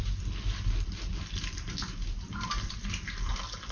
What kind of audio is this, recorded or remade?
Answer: recorded